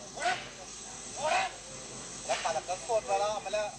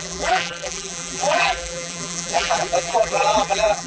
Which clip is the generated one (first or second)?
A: second